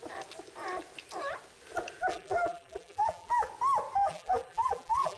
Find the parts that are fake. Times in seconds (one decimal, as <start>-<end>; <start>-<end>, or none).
2.1-3.5; 4.0-5.2